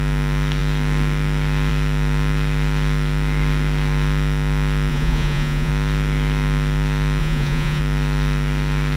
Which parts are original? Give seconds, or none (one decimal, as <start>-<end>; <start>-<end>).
0.0-4.9; 5.7-7.2; 7.8-9.0